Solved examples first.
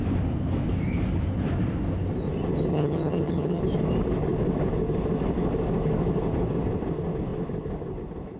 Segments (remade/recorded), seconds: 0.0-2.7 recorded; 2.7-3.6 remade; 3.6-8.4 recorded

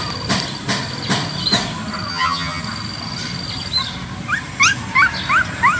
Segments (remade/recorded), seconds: 0.0-2.1 recorded; 2.1-2.6 remade; 2.6-5.8 recorded

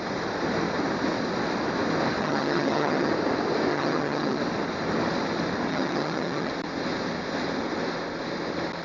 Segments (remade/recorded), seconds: 0.0-2.2 recorded; 2.2-3.1 remade; 3.1-3.7 recorded; 3.7-4.4 remade; 4.4-5.7 recorded; 5.7-6.5 remade; 6.5-8.8 recorded

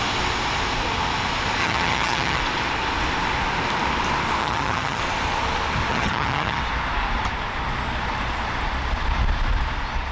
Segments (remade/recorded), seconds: 0.0-1.6 recorded; 1.6-2.4 remade; 2.4-4.4 recorded; 4.4-5.0 remade; 5.0-5.9 recorded; 5.9-6.6 remade; 6.6-10.1 recorded

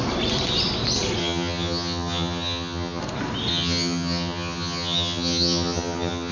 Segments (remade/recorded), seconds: 0.0-1.2 recorded; 1.2-3.0 remade; 3.0-3.5 recorded; 3.5-6.3 remade

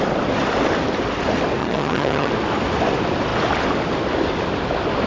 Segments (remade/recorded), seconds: 0.0-1.6 recorded; 1.6-2.3 remade; 2.3-5.1 recorded

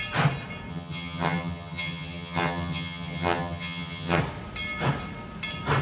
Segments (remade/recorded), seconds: 0.0-0.7 recorded; 0.7-4.2 remade; 4.2-5.8 recorded

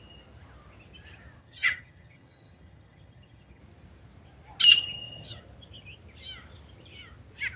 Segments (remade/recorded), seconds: 0.0-1.4 recorded; 1.4-3.6 remade; 3.6-4.7 recorded; 4.7-5.4 remade; 5.4-7.6 recorded